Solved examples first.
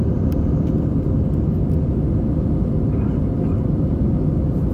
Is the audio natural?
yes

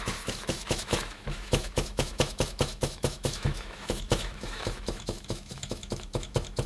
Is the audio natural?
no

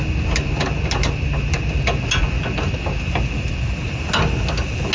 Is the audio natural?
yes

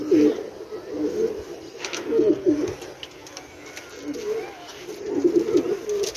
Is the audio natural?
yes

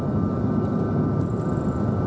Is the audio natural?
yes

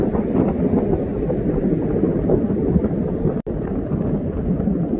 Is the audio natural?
yes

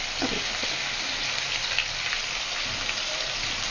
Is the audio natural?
yes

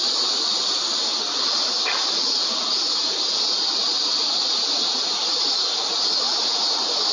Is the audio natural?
yes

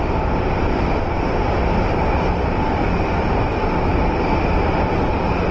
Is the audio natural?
yes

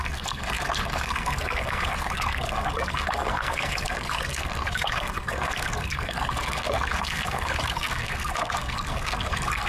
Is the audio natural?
no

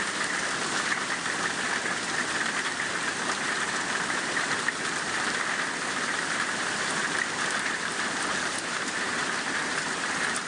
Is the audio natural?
no